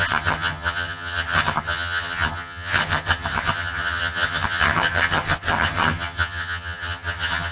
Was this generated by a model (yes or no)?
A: yes